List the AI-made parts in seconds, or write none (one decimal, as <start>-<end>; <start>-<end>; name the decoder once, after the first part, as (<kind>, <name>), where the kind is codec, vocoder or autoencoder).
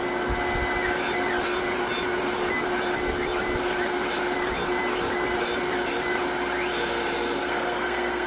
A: 7.4-8.3 (codec, SNAC)